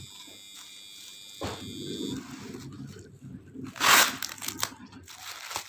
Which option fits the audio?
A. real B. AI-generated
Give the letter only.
A